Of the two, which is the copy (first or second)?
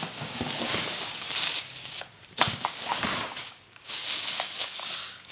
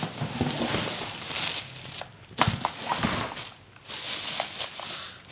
first